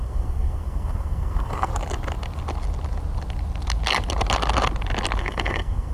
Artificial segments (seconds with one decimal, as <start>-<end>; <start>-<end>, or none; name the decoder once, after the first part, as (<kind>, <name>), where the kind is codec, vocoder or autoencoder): 0.0-1.7 (codec, SNAC); 5.2-5.9